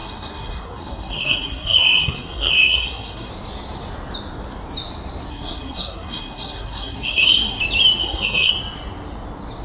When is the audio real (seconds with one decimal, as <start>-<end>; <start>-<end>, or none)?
3.3-5.3; 7.6-8.0; 8.5-9.6